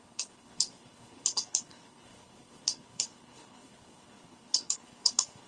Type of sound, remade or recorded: remade